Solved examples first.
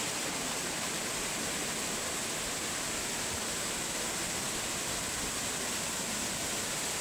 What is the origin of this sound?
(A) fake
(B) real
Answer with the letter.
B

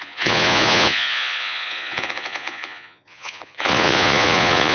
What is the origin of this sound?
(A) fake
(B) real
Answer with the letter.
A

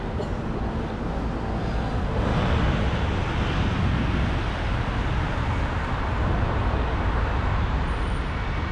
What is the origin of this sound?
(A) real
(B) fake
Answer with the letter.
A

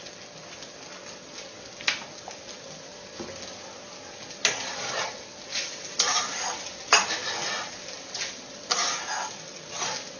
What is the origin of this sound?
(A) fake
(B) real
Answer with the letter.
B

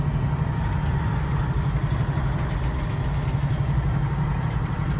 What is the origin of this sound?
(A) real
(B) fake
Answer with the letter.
A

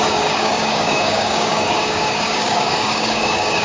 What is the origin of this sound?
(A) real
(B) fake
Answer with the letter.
B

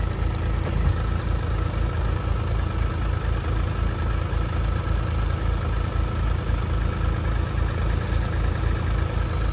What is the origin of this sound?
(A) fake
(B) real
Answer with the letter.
B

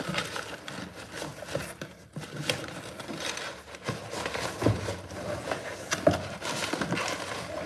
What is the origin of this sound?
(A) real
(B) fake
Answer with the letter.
A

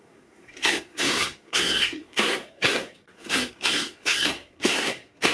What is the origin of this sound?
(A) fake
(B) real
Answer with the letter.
A